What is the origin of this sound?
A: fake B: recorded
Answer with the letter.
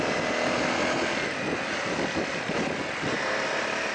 B